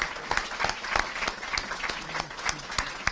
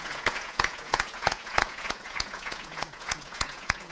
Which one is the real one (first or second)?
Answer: first